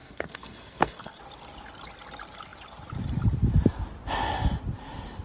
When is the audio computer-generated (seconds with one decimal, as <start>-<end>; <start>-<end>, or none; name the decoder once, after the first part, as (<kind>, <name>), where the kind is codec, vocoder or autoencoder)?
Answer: 0.0-1.2 (codec, SNAC)